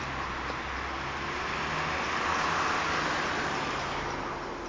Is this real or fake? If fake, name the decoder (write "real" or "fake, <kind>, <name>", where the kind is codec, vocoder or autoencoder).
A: real